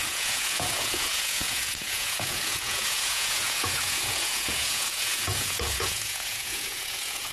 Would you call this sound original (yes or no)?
no